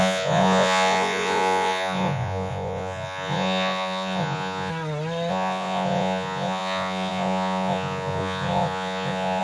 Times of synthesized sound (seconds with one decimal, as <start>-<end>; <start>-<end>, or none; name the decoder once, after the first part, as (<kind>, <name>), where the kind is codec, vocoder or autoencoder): 0.0-4.7 (vocoder, Vocos); 5.3-9.4